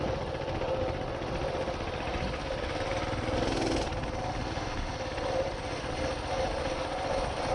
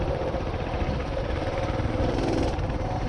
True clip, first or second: first